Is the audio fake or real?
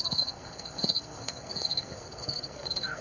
fake